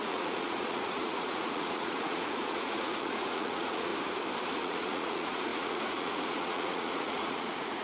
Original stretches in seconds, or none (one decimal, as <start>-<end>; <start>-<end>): 3.9-4.6